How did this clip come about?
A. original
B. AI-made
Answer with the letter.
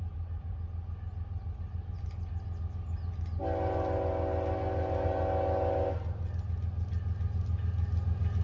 A